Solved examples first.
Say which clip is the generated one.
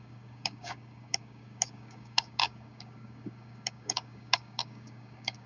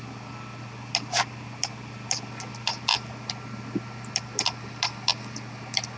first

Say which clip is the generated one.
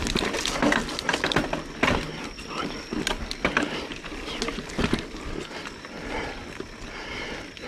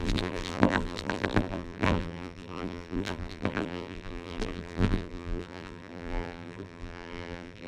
second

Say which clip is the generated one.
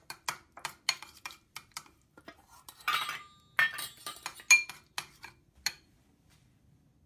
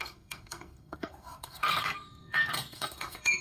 second